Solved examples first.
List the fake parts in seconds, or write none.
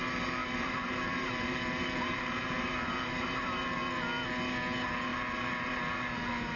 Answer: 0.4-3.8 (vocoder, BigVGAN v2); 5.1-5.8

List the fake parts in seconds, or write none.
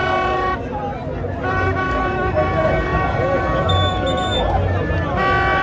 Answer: none